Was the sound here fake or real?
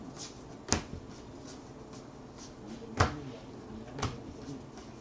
real